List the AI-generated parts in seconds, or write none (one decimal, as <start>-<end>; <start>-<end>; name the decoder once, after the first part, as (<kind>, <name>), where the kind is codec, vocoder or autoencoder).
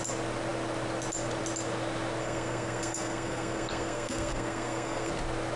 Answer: 2.2-5.1 (codec, SNAC)